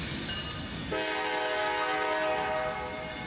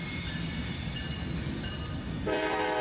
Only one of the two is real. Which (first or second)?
first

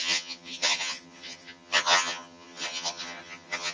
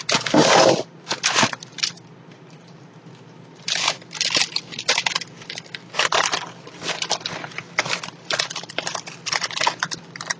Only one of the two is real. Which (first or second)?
second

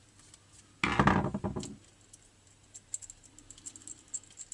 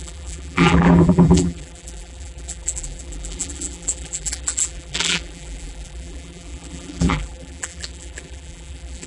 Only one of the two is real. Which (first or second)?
first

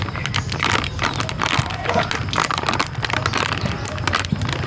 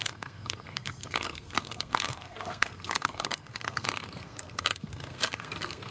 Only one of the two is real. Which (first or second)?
first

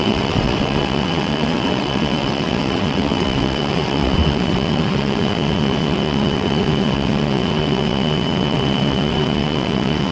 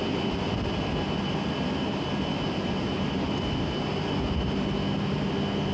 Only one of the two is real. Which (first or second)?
second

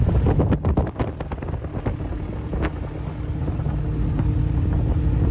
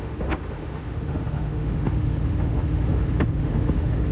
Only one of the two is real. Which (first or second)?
first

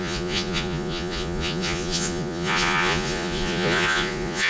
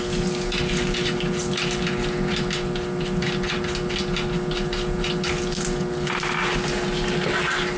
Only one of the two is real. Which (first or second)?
second